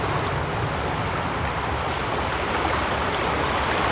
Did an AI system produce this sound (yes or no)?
no